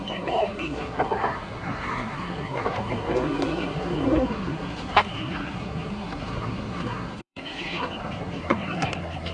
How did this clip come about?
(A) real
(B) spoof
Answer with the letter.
B